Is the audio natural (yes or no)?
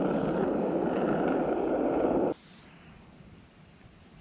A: yes